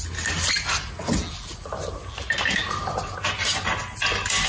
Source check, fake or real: real